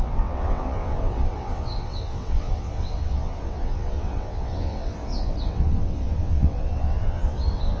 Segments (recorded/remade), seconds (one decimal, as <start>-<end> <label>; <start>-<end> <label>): 0.0-7.8 remade